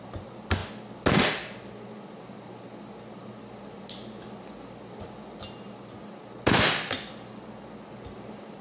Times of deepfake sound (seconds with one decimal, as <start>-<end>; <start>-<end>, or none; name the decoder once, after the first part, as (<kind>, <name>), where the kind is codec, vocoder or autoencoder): none